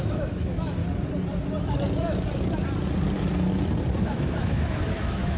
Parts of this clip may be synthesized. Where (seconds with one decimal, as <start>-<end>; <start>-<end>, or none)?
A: 0.0-0.8; 4.0-5.4

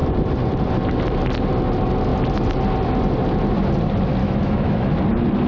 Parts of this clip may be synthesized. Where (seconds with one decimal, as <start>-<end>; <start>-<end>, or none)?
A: 4.2-4.9

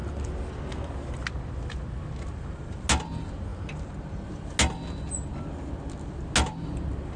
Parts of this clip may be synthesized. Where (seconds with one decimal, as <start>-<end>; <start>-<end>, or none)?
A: none

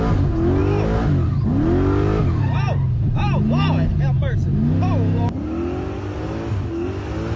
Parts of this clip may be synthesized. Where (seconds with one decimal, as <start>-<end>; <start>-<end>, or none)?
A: none

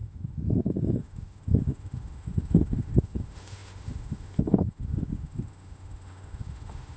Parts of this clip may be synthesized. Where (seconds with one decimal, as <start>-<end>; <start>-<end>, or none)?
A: 0.0-7.0

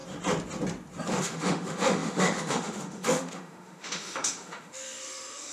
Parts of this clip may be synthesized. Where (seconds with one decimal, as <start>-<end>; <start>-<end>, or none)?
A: 1.2-5.5